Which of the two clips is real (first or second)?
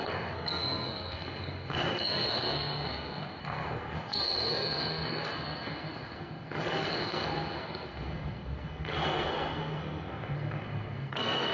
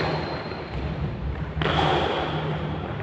second